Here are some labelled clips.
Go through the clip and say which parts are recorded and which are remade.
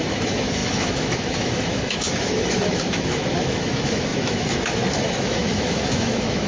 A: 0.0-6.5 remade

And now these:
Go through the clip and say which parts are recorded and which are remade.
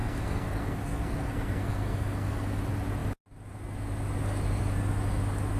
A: 0.0-2.6 remade; 2.6-5.6 recorded